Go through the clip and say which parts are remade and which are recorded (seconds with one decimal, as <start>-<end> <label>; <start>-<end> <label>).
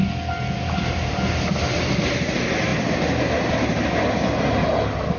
0.0-5.2 recorded